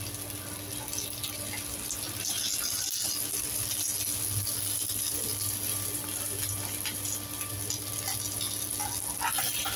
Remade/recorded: recorded